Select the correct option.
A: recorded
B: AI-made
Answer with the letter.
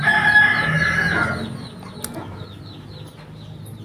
A